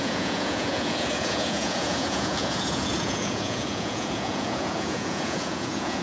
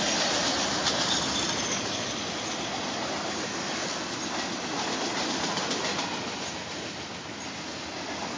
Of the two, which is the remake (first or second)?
first